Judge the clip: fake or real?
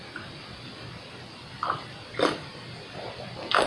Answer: real